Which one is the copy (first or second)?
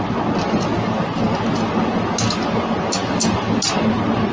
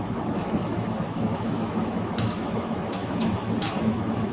second